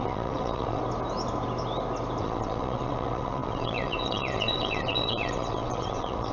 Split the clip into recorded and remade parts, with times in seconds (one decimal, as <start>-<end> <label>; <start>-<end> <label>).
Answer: 0.0-0.8 remade; 0.8-2.2 recorded; 2.2-6.3 remade